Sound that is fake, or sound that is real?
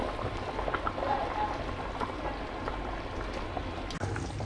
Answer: real